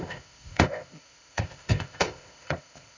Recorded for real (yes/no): no